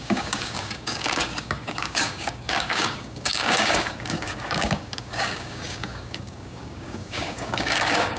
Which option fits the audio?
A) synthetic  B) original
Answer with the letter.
A